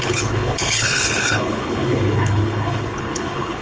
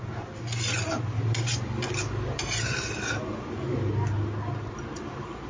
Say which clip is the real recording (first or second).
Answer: second